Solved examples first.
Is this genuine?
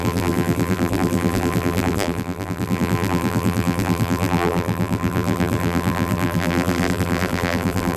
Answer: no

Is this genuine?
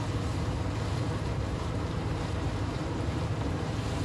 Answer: no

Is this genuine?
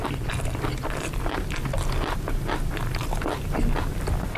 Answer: yes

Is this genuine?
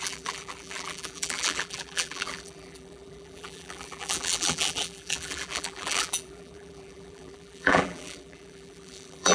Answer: no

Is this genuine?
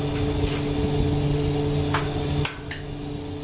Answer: yes